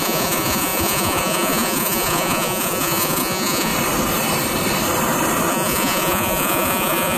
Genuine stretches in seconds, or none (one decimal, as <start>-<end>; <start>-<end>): 3.7-5.5